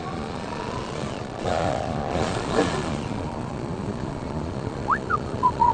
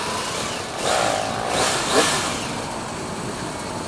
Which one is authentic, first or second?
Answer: second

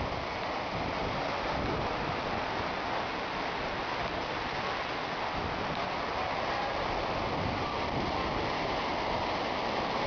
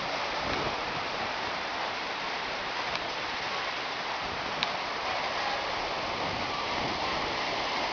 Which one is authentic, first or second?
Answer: first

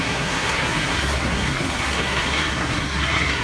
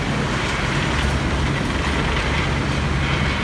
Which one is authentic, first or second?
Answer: second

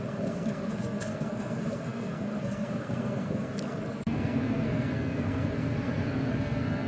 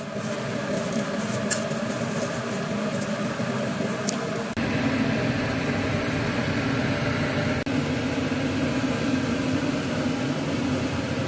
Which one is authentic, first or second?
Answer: second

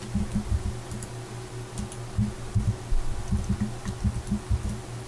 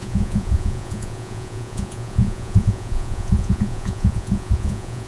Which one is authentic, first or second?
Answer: first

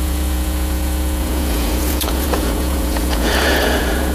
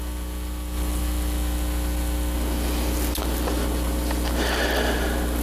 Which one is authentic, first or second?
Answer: second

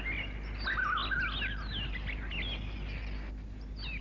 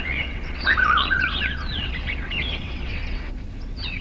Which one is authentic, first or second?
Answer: first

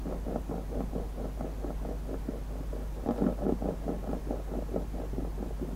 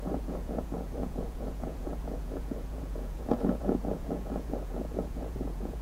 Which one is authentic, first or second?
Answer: first